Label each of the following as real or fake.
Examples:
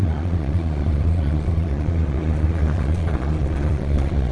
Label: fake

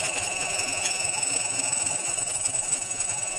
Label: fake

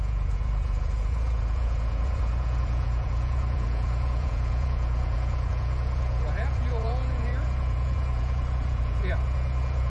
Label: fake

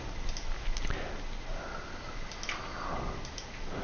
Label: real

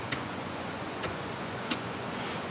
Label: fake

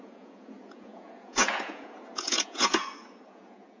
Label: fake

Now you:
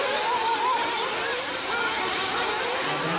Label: real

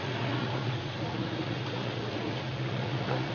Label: fake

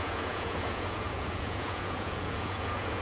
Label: fake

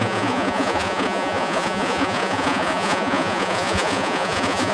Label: fake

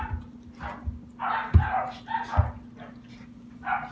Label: real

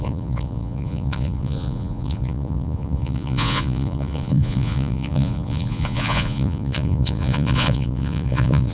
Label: fake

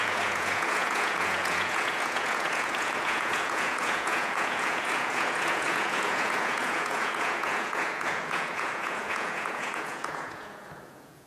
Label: fake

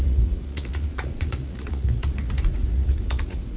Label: fake